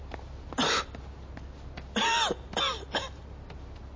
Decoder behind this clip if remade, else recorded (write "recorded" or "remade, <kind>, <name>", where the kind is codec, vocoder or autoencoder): recorded